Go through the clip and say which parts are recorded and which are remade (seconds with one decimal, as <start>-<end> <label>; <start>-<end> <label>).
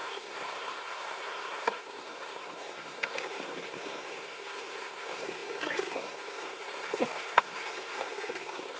0.0-8.8 remade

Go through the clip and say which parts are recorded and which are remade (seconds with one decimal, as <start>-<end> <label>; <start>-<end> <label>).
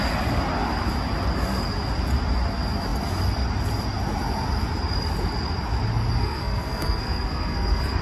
0.0-6.2 recorded; 6.2-8.0 remade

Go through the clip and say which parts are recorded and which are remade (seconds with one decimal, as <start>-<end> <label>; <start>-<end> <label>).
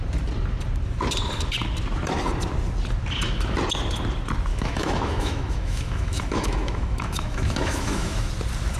0.0-4.5 recorded; 4.5-8.3 remade; 8.3-8.8 recorded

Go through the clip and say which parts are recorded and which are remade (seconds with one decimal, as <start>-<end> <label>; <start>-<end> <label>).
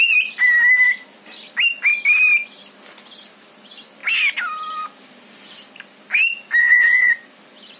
0.0-6.6 recorded; 6.6-7.1 remade; 7.1-7.8 recorded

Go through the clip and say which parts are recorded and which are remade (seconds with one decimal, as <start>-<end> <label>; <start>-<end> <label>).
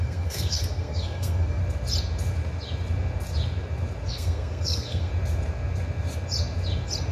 0.0-1.6 remade; 1.6-4.1 recorded; 4.1-5.1 remade; 5.1-7.1 recorded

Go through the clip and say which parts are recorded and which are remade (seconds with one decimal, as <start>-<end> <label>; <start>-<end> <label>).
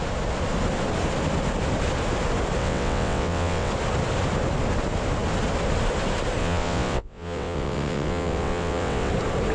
0.0-2.6 recorded; 2.6-3.7 remade; 3.7-6.4 recorded; 6.4-9.1 remade; 9.1-9.5 recorded